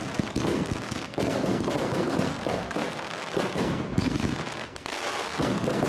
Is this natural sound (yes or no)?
no